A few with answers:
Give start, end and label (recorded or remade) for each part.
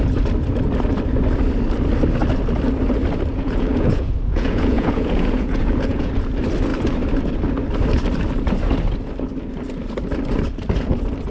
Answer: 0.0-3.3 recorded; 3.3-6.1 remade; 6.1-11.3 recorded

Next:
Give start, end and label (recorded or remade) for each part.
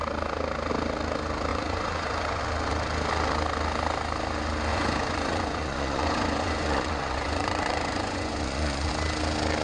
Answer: 0.0-1.5 recorded; 1.5-2.4 remade; 2.4-4.7 recorded; 4.7-8.9 remade; 8.9-9.6 recorded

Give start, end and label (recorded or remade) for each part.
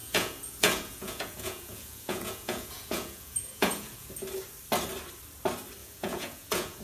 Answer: 0.0-4.1 remade; 4.1-5.8 recorded; 5.8-6.8 remade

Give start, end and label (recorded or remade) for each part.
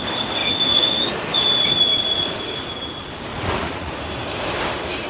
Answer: 0.0-3.3 recorded; 3.3-3.9 remade; 3.9-5.1 recorded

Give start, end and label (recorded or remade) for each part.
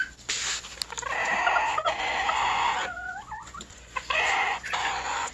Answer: 0.0-1.7 recorded; 1.7-5.3 remade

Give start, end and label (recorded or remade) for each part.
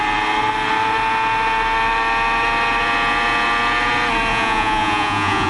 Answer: 0.0-4.3 recorded; 4.3-5.5 remade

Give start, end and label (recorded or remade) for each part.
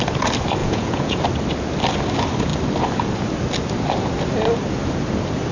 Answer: 0.0-0.6 recorded; 0.6-1.2 remade; 1.2-5.5 recorded